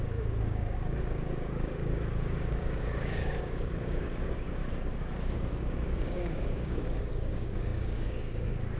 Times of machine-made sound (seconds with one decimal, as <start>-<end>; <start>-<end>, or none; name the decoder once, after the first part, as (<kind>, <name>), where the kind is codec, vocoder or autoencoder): 0.0-4.6 (codec, DAC); 5.2-8.8